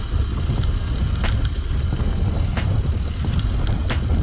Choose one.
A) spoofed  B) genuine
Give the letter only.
B